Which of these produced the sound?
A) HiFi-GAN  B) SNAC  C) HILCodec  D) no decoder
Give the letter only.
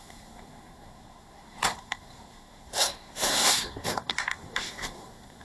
B